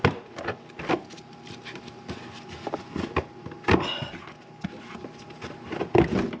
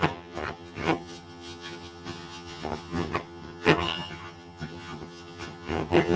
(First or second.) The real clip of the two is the first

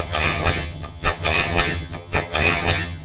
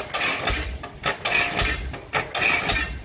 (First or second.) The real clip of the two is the second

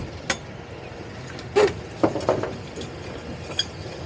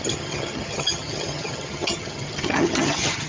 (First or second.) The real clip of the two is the first